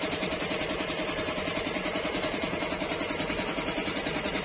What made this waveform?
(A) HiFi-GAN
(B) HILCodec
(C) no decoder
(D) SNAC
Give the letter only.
C